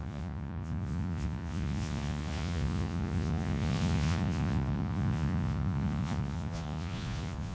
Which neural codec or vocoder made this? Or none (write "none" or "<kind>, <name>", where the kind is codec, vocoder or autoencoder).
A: vocoder, Vocos